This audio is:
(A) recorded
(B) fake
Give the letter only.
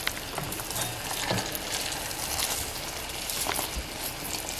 A